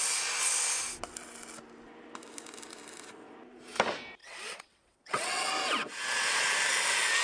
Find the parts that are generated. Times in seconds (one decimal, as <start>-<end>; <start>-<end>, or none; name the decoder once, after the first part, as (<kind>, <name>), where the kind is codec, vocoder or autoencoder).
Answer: 4.2-5.5 (vocoder, WaveNeXt)

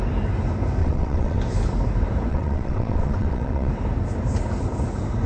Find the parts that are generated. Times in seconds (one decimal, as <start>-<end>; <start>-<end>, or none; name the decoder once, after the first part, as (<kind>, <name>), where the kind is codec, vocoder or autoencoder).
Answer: 0.8-1.4 (vocoder, WaveNeXt); 2.3-3.7